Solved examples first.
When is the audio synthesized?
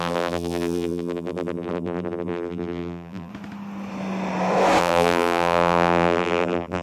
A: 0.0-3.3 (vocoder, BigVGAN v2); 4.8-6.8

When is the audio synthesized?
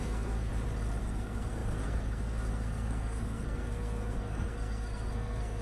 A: 0.0-0.5 (codec, SNAC); 1.0-5.6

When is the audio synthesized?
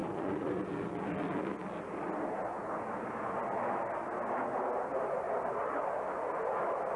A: 0.0-0.7 (vocoder, Vocos)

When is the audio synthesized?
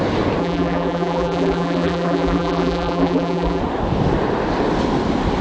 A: 0.4-3.6 (vocoder, BigVGAN v2)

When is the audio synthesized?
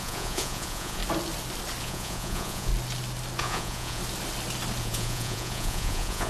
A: 0.0-1.0 (vocoder, Vocos); 1.8-2.7; 3.4-4.0; 4.8-6.3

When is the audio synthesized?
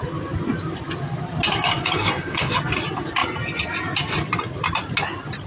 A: 1.5-2.5 (codec, DAC)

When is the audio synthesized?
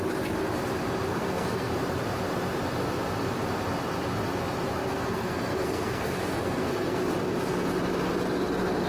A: 1.1-1.7 (codec, SNAC); 4.8-7.0